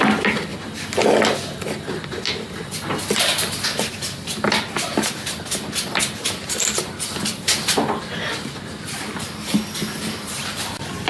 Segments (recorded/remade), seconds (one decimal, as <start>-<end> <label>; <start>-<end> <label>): 0.0-11.1 recorded